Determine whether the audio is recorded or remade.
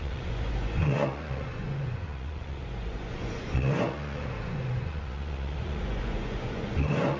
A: remade